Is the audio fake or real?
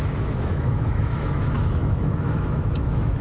fake